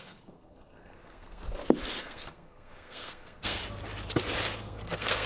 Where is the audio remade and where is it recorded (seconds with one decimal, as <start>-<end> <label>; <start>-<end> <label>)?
0.0-1.4 remade; 1.4-2.0 recorded; 2.0-3.6 remade; 3.6-4.6 recorded; 4.6-5.3 remade